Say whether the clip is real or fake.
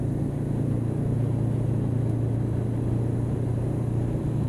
real